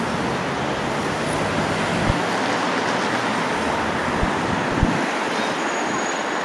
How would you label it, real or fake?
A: real